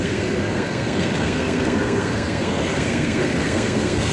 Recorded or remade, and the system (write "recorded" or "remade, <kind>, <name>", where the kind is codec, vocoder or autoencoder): remade, codec, SNAC